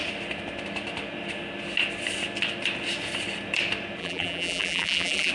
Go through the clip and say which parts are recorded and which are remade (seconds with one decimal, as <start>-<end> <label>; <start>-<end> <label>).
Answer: 0.0-4.0 recorded; 4.0-5.3 remade